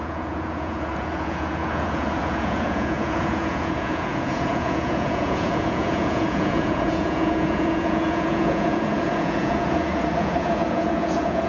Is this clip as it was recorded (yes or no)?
no